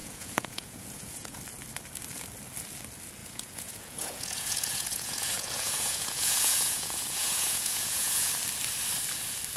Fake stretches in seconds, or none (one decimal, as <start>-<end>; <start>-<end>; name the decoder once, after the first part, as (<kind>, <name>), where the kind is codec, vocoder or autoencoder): 0.0-1.4 (vocoder, Vocos); 3.2-8.3